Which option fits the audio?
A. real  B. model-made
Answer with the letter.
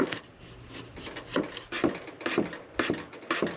A